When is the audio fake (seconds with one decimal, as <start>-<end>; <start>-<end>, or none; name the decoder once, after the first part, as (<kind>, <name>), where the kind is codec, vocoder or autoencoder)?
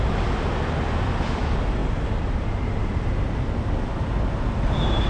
1.8-3.8 (vocoder, BigVGAN v2)